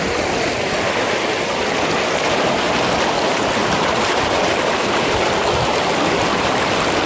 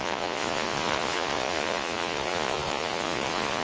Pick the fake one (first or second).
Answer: second